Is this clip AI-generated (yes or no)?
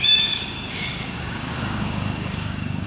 yes